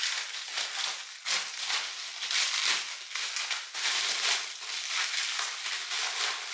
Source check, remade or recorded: recorded